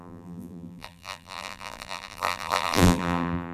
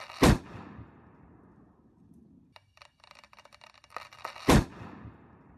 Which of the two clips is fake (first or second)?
first